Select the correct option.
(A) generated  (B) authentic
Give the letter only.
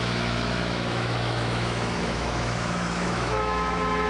A